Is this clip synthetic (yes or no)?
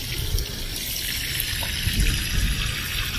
no